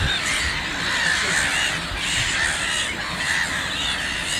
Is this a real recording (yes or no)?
yes